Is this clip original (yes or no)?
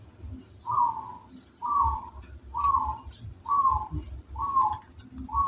yes